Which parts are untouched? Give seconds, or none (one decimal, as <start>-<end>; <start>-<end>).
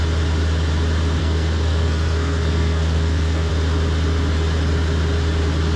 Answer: 0.0-1.2; 3.5-5.8